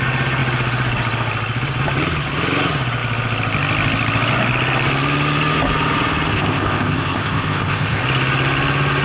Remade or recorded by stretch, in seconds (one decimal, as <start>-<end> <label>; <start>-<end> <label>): 0.0-6.3 recorded; 6.3-8.0 remade; 8.0-9.0 recorded